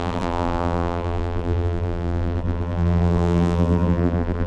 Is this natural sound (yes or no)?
no